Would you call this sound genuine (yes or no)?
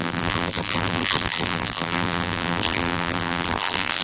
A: no